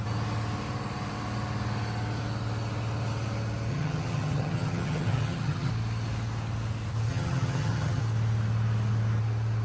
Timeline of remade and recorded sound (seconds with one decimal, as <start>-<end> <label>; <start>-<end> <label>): 0.0-3.7 recorded; 3.7-5.7 remade; 5.7-7.1 recorded; 7.1-8.0 remade; 8.0-9.6 recorded